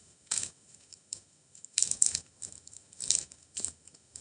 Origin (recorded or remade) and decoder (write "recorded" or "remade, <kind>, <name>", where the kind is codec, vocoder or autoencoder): remade, autoencoder, DAC-VAE